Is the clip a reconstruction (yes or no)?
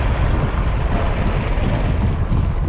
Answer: no